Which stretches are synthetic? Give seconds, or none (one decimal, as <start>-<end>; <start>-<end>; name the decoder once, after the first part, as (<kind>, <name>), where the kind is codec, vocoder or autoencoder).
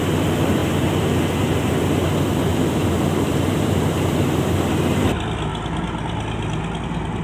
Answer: 2.5-4.5 (vocoder, BigVGAN v2)